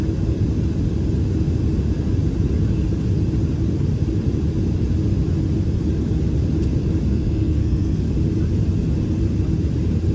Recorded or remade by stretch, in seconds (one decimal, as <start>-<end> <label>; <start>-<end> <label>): 0.0-7.1 recorded; 7.1-8.1 remade; 8.1-10.1 recorded